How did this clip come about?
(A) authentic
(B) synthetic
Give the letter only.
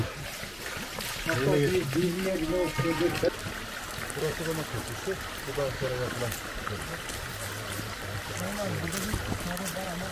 A